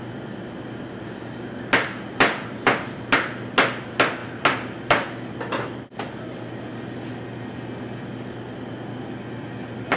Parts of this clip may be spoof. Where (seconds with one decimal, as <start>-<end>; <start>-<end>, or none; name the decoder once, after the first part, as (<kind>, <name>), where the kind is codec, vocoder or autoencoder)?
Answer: none